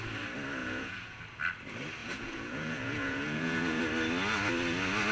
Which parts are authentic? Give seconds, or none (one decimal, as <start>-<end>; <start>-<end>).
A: 0.0-0.6; 1.2-2.0; 3.8-5.1